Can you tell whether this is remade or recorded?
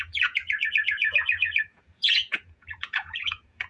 remade